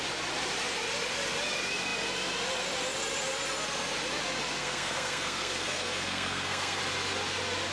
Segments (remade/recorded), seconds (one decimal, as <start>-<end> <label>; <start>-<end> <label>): 0.0-4.6 recorded; 4.6-6.8 remade; 6.8-7.7 recorded